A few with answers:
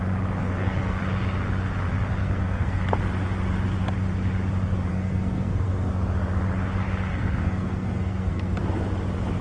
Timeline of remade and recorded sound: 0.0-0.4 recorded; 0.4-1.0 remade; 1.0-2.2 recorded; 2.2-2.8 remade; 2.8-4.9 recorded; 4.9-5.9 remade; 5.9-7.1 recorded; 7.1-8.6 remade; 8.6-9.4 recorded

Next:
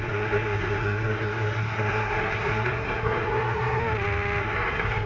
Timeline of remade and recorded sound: 0.0-3.8 remade; 3.8-4.4 recorded; 4.4-5.1 remade

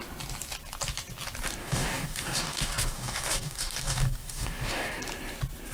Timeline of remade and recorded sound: 0.0-1.6 recorded; 1.6-5.0 remade; 5.0-5.7 recorded

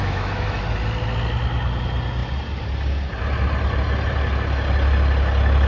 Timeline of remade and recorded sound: 0.0-0.6 remade; 0.6-5.7 recorded

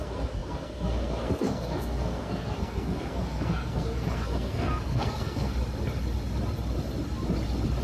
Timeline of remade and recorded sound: 0.0-5.5 remade; 5.5-7.8 recorded

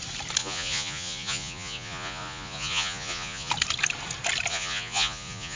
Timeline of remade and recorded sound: 0.0-0.4 recorded; 0.4-3.5 remade; 3.5-4.5 recorded; 4.5-5.6 remade